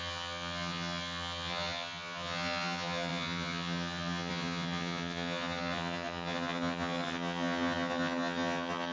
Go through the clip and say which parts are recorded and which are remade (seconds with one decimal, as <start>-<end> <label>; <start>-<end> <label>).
0.0-8.9 remade